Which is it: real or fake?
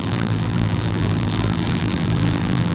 fake